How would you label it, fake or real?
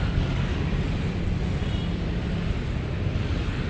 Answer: real